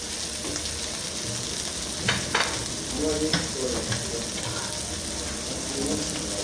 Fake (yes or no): no